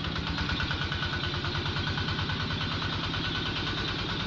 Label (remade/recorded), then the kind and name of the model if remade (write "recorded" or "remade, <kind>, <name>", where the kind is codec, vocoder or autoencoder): recorded